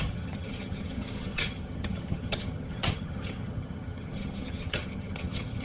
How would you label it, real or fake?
fake